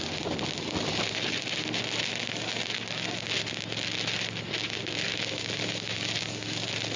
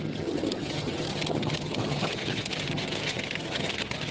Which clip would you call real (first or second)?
first